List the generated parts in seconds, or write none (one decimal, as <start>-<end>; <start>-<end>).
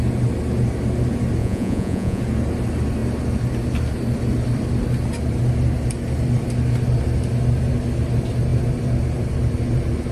1.4-2.2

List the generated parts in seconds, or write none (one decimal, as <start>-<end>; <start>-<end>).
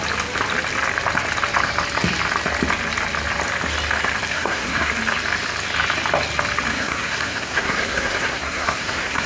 4.3-4.9; 6.7-9.3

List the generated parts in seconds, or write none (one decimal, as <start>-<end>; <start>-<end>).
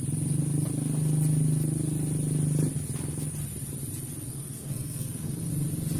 4.3-5.5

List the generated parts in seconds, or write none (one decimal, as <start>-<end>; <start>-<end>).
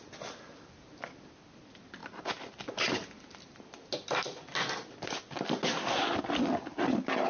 none